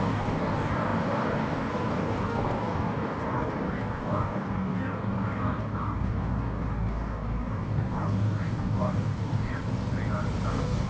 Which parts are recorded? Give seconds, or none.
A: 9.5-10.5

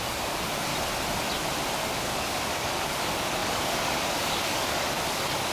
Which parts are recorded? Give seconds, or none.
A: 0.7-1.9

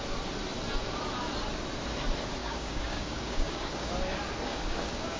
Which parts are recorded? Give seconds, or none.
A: 0.0-2.4; 3.9-4.5